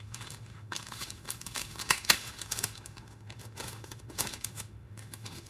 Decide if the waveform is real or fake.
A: fake